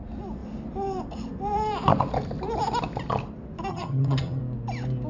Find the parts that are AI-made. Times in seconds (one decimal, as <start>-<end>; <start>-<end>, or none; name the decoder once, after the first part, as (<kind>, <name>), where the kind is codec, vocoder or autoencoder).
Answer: 3.7-4.4 (vocoder, HiFi-GAN)